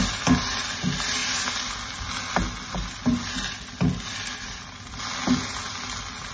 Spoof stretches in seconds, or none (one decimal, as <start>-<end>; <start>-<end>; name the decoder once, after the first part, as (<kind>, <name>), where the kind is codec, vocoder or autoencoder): none